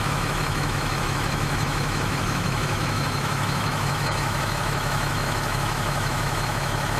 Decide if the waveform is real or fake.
fake